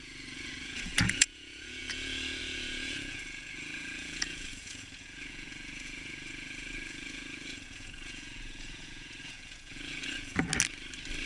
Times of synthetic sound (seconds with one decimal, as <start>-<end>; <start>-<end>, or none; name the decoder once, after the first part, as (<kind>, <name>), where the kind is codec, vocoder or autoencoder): 0.0-10.5 (vocoder, Vocos)